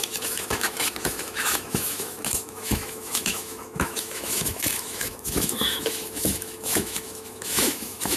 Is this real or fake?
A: fake